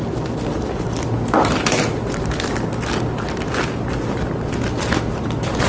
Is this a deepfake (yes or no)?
no